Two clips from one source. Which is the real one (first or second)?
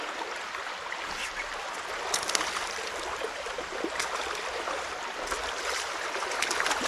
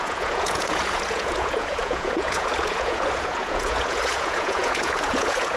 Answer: first